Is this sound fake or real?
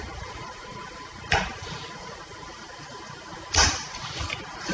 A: fake